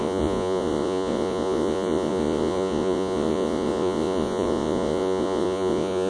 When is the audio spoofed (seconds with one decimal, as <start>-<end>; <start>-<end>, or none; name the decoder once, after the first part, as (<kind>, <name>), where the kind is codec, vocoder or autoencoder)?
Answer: 0.0-6.1 (vocoder, Vocos)